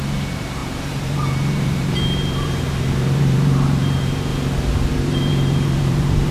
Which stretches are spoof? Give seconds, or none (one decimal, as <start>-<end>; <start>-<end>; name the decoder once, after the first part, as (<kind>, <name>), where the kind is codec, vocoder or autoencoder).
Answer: 0.0-4.3 (vocoder, BigVGAN v2); 4.9-6.3